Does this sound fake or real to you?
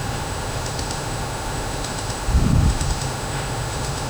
fake